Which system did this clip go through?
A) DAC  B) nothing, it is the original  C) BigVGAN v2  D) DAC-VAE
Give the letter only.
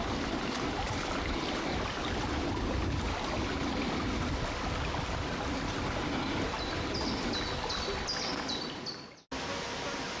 B